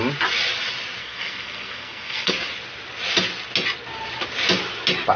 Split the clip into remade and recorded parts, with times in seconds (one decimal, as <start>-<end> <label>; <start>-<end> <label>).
0.0-1.0 recorded; 1.0-2.3 remade; 2.3-5.2 recorded

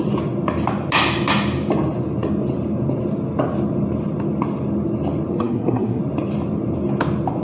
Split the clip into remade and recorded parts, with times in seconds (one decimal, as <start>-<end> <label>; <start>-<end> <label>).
0.0-5.3 recorded; 5.3-6.0 remade; 6.0-7.4 recorded

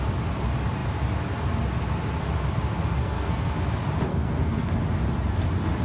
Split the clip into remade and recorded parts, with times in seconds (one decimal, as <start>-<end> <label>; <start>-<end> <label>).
0.0-3.0 recorded; 3.0-3.5 remade; 3.5-4.1 recorded; 4.1-4.7 remade; 4.7-5.8 recorded

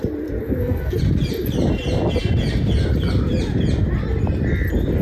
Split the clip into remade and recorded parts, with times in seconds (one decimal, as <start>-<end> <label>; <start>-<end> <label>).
0.0-0.4 recorded; 0.4-1.0 remade; 1.0-5.0 recorded

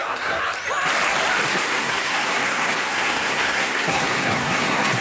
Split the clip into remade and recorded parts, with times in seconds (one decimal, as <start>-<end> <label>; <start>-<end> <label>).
0.0-0.4 remade; 0.4-1.5 recorded; 1.5-5.0 remade

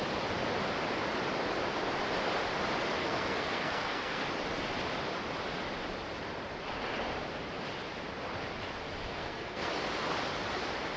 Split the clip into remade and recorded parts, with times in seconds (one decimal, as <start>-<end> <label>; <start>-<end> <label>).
0.0-3.0 recorded; 3.0-4.2 remade; 4.2-9.1 recorded; 9.1-9.7 remade; 9.7-11.0 recorded

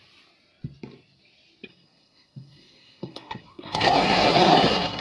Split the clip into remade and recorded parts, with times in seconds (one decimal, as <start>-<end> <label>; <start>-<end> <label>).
0.0-1.7 recorded; 1.7-5.0 remade

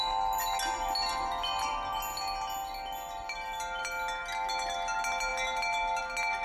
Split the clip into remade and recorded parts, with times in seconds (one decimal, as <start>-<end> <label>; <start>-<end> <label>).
0.0-6.4 recorded